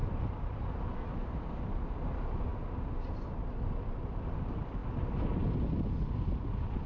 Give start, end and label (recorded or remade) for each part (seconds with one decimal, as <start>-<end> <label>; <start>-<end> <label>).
0.0-6.9 recorded